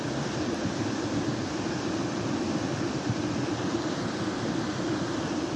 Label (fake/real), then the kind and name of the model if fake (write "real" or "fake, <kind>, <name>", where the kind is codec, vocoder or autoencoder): real